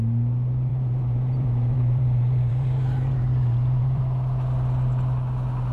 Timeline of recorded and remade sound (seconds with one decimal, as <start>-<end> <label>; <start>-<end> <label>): 0.0-0.7 recorded; 0.7-4.0 remade; 4.0-5.7 recorded